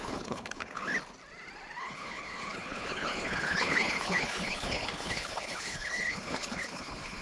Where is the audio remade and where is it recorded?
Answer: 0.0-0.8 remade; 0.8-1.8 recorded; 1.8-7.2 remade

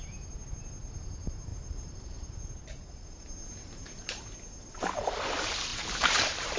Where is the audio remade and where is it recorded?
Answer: 0.0-1.5 recorded; 1.5-2.5 remade; 2.5-5.7 recorded; 5.7-6.6 remade

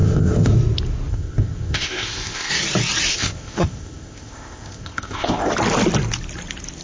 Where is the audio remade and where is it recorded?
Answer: 0.0-0.5 remade; 0.5-1.1 recorded; 1.1-2.5 remade; 2.5-3.1 recorded; 3.1-5.5 remade; 5.5-6.8 recorded

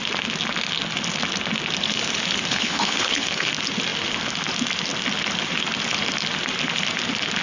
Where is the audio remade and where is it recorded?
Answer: 0.0-2.5 recorded; 2.5-3.5 remade; 3.5-7.4 recorded

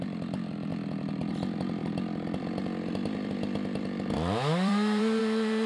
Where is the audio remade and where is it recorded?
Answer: 0.0-5.7 remade